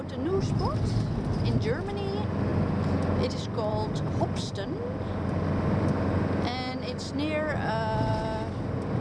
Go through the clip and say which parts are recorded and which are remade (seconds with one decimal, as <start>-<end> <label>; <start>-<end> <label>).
0.0-9.0 recorded